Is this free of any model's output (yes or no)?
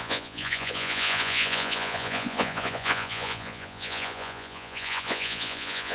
no